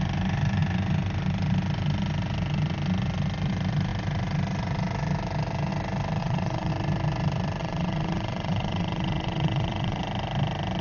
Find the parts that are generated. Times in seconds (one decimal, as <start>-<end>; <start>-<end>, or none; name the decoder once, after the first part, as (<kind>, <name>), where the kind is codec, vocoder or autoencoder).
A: 6.2-6.7 (vocoder, WaveNeXt); 7.6-10.0